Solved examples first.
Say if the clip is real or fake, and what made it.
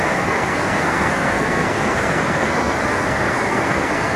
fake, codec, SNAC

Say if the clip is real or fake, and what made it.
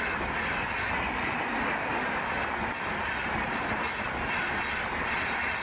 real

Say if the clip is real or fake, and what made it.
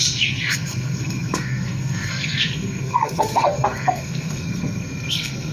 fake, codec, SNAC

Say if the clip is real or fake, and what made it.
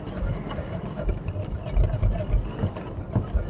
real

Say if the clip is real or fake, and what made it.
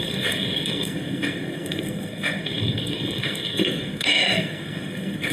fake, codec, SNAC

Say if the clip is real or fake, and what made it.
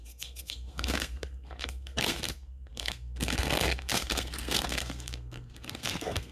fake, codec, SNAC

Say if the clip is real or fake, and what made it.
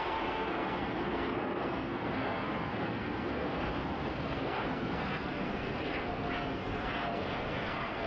fake, codec, SNAC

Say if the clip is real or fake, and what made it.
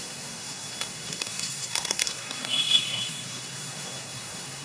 fake, codec, SNAC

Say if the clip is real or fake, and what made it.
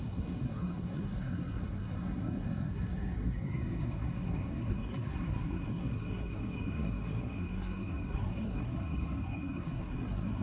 fake, codec, SNAC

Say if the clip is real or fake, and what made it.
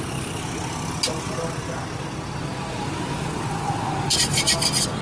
real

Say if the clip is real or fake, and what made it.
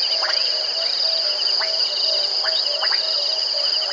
real